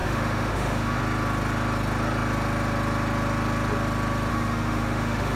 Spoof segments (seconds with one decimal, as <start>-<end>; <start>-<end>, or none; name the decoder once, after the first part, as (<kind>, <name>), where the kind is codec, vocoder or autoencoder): 0.0-1.0 (autoencoder, DAC-VAE); 4.3-5.4

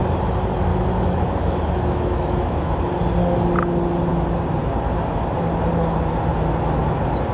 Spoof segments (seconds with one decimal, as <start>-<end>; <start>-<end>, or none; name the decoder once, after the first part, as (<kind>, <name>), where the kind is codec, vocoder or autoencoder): 0.7-2.8 (autoencoder, DAC-VAE)